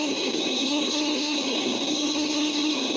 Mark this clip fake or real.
fake